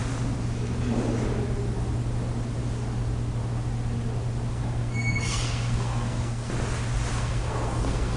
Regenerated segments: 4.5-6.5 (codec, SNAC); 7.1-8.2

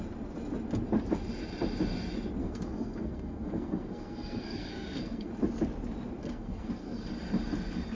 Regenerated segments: 2.4-5.3 (codec, SNAC); 6.2-7.1

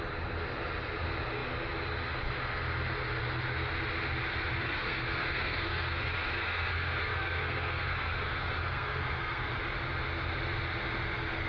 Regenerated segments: 4.6-9.5 (codec, SNAC)

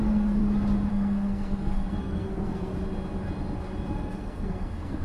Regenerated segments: 0.0-0.4 (codec, SNAC); 0.9-2.7; 3.9-5.0

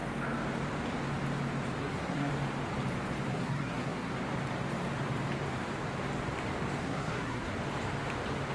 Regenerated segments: 1.8-2.3 (codec, SNAC); 3.3-4.1; 6.8-7.5